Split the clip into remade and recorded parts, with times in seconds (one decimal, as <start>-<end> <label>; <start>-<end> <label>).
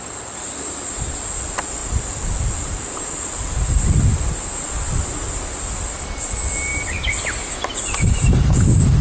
0.0-6.7 recorded; 6.7-7.2 remade; 7.2-9.0 recorded